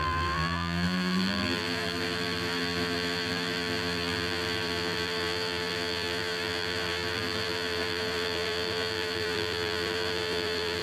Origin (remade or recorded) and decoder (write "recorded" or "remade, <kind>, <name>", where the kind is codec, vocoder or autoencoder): remade, vocoder, BigVGAN v2